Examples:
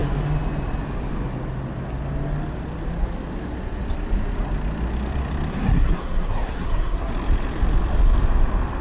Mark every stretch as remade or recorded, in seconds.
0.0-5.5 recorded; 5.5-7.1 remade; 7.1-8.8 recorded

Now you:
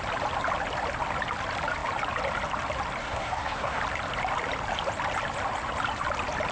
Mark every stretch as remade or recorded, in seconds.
0.0-3.0 recorded; 3.0-3.8 remade; 3.8-6.5 recorded

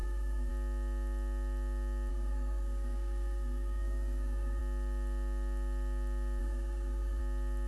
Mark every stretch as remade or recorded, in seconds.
0.0-0.5 remade; 0.5-2.1 recorded; 2.1-4.6 remade; 4.6-6.4 recorded; 6.4-7.2 remade; 7.2-7.7 recorded

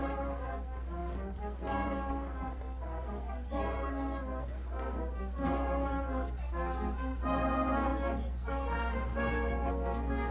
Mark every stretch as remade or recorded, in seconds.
0.0-10.3 remade

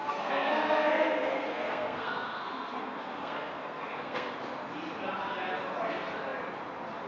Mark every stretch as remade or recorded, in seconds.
0.0-4.3 remade; 4.3-7.1 recorded